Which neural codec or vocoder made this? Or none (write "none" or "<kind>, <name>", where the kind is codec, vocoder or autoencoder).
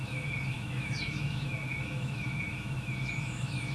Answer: autoencoder, DAC-VAE